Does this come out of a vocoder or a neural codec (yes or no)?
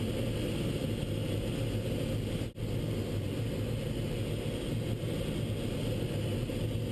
no